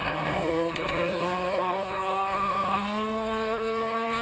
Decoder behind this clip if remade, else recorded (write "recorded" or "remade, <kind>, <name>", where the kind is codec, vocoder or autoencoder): remade, codec, SNAC